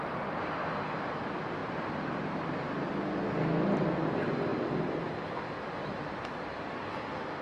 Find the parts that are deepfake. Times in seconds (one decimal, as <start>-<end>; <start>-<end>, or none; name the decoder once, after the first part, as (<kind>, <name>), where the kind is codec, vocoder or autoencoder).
1.6-2.9 (vocoder, BigVGAN v2); 4.5-5.4